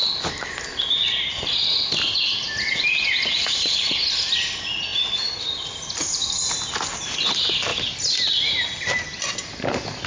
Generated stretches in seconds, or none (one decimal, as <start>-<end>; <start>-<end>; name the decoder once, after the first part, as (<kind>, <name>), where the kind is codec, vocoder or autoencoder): none